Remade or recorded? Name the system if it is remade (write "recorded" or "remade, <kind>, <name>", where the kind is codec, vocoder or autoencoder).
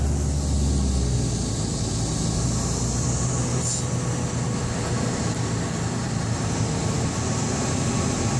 recorded